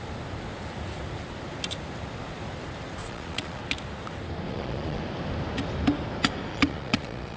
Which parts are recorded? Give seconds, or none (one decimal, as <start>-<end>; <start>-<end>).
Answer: 0.0-3.0; 3.6-4.5; 5.0-6.5